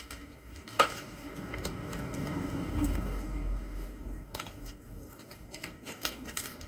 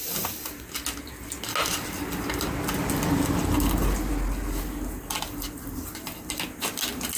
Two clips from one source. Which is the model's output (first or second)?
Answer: first